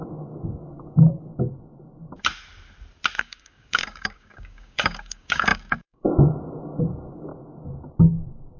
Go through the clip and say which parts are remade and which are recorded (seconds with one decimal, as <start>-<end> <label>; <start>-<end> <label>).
0.0-1.3 remade; 1.3-3.2 recorded; 3.2-7.3 remade; 7.3-8.6 recorded